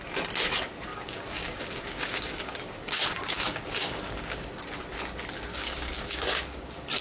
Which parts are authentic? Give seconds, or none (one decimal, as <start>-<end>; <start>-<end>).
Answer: 0.0-0.9; 4.5-5.5